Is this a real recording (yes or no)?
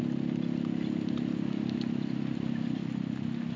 yes